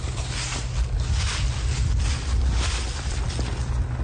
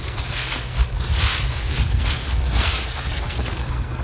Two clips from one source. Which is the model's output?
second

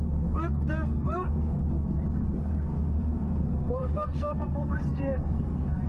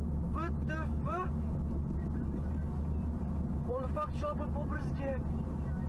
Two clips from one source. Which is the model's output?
first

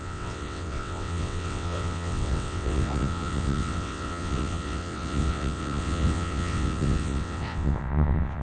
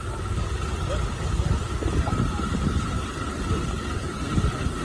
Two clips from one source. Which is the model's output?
first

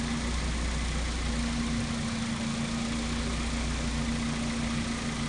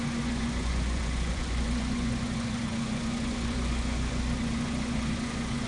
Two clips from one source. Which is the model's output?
second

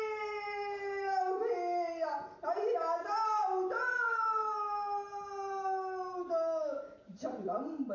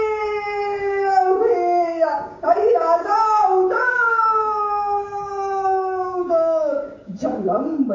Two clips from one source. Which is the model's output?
second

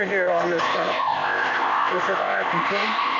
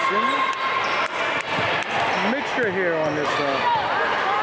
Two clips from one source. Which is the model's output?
first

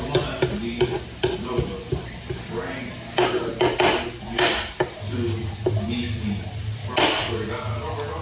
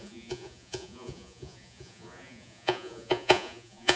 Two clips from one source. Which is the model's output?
second